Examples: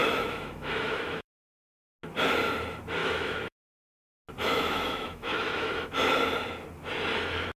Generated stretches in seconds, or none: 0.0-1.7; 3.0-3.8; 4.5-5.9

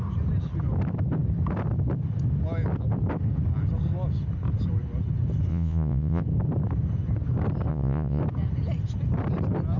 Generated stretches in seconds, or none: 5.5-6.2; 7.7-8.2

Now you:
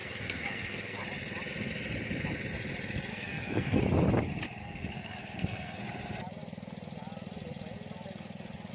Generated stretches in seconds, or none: 0.0-1.0; 3.1-3.8; 4.6-5.8

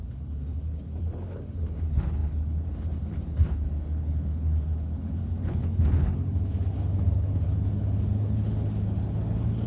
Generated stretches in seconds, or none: 0.0-9.7

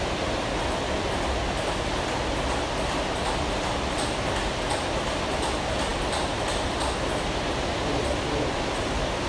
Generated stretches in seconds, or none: none

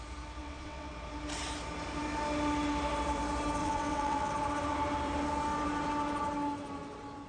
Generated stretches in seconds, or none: 0.4-0.9; 3.6-4.3